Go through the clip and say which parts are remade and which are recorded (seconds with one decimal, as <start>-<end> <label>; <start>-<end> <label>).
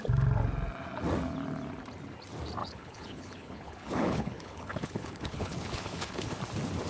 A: 0.0-2.6 recorded; 2.6-6.4 remade; 6.4-6.9 recorded